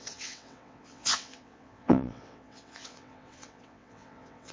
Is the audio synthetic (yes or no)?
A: yes